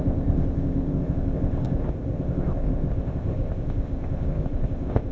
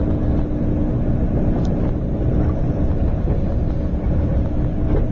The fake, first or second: first